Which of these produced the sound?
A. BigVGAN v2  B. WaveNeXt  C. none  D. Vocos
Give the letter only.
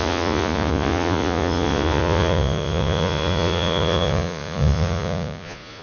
D